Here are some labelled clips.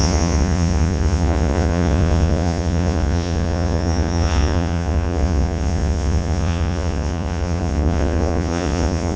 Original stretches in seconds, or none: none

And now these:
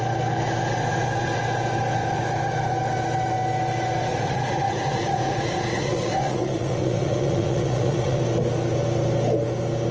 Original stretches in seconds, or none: 0.0-4.1; 8.2-9.9

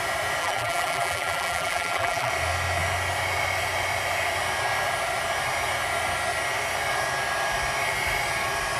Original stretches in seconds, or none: 0.0-0.4; 2.3-8.8

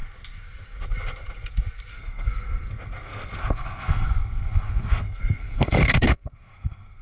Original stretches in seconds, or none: 0.0-1.9

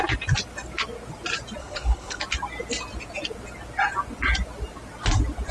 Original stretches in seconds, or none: 0.0-1.6; 2.2-5.5

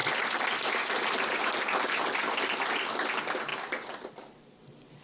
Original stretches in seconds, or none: 0.0-5.0

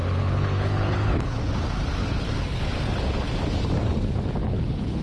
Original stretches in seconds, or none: 1.5-2.0; 2.6-4.4